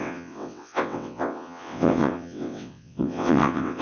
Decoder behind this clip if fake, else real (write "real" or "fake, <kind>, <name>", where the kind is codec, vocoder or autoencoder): fake, vocoder, WaveNeXt